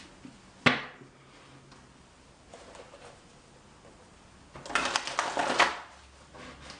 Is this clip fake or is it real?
real